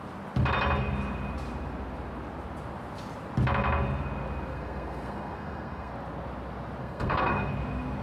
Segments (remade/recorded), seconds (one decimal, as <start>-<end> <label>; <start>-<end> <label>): 0.0-4.5 recorded; 4.5-5.9 remade; 5.9-6.8 recorded; 6.8-7.5 remade; 7.5-8.0 recorded